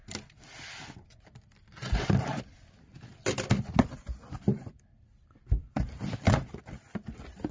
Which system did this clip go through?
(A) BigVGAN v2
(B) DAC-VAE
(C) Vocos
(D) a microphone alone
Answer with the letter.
A